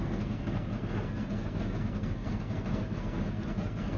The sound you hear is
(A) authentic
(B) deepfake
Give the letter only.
B